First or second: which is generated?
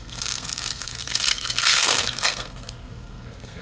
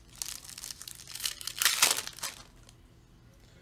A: first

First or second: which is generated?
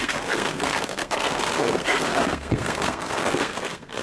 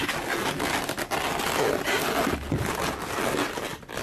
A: first